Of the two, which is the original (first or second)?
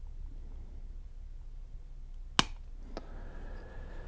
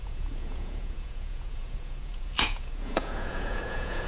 first